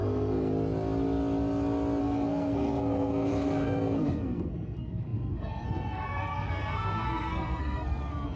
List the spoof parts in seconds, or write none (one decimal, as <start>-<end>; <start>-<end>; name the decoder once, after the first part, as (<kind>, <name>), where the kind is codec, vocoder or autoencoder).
0.0-0.5 (codec, SNAC); 2.0-8.4